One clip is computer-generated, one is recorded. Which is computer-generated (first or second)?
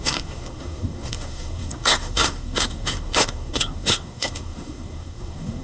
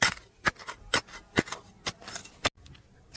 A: first